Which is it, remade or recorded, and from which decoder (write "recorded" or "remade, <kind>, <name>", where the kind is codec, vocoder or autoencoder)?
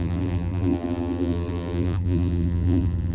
remade, vocoder, BigVGAN v2